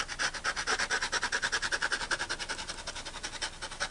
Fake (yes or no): no